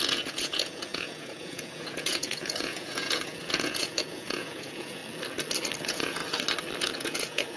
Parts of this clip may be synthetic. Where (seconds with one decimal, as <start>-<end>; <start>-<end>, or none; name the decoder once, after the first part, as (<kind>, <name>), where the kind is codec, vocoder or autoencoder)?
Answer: 0.0-5.0 (vocoder, Vocos); 5.8-6.2; 6.8-7.6